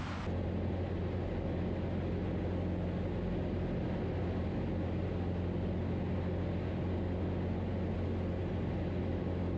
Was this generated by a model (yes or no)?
no